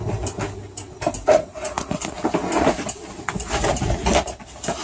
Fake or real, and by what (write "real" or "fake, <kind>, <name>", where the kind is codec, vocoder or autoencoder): real